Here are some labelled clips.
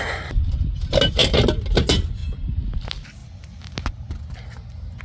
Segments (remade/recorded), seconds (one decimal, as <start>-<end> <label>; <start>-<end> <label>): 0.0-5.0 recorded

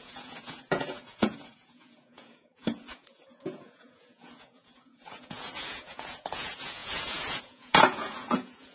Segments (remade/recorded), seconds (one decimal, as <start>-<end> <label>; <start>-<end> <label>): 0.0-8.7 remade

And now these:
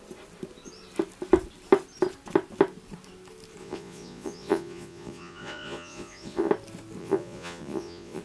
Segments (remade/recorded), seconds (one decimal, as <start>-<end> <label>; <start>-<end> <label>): 0.0-3.6 recorded; 3.6-6.5 remade; 6.5-7.0 recorded; 7.0-8.2 remade